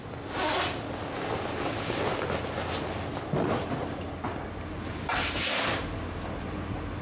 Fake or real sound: real